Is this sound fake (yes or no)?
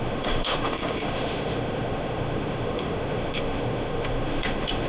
yes